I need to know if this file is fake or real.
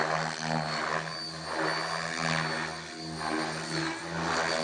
real